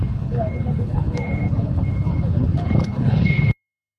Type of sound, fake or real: fake